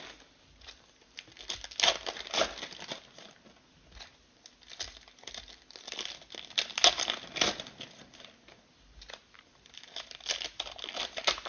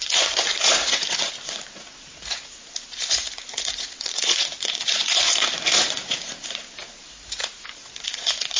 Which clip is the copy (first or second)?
second